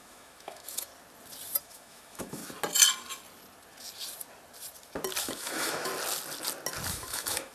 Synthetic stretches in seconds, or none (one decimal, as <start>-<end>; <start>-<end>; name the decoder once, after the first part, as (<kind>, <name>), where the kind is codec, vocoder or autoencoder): 0.0-0.9 (autoencoder, DAC-VAE); 1.6-2.4; 5.2-5.9; 6.9-7.5